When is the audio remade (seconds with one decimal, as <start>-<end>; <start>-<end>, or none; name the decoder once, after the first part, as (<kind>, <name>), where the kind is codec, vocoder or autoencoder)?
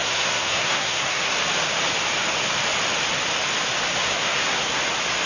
0.0-1.4 (codec, SNAC); 4.0-4.8